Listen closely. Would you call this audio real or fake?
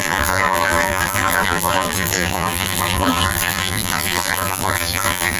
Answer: fake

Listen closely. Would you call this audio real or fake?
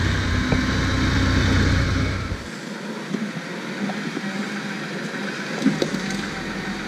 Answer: real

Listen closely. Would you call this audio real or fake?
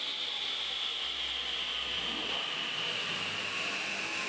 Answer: real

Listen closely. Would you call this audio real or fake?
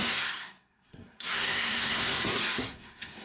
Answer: fake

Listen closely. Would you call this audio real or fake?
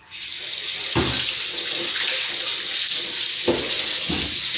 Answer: real